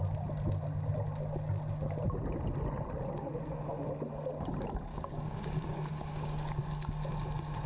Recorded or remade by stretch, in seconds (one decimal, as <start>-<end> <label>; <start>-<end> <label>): 0.0-4.9 recorded; 4.9-6.6 remade; 6.6-7.7 recorded